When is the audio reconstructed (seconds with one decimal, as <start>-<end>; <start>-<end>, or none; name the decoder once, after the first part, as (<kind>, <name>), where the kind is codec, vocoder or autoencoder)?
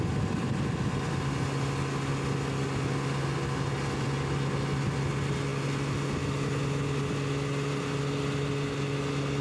none